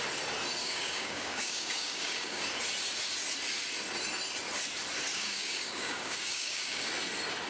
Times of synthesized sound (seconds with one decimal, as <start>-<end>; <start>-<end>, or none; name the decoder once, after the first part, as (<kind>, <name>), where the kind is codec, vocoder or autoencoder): 0.6-2.4 (codec, DAC); 5.1-6.9